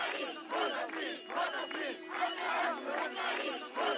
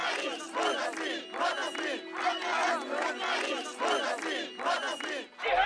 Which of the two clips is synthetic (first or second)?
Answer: first